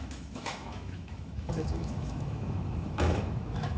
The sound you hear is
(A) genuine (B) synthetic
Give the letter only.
B